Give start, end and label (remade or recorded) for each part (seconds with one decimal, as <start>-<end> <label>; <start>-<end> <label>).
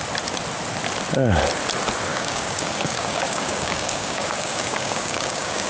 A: 0.0-2.1 recorded; 2.1-5.7 remade